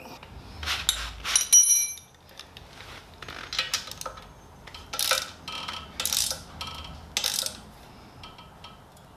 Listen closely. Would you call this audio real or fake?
real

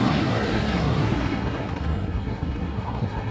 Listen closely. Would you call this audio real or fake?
fake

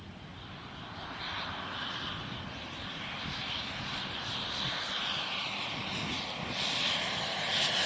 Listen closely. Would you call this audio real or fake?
fake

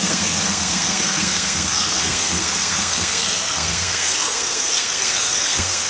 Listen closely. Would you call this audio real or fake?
fake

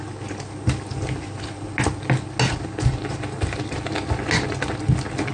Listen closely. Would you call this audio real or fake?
real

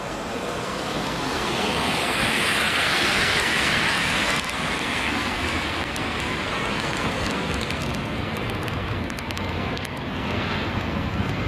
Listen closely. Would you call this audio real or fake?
fake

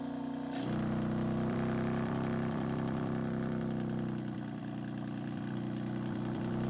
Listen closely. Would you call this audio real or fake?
fake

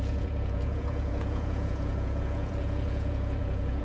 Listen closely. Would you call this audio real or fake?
fake